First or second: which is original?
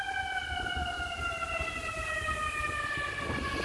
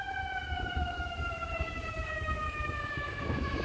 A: first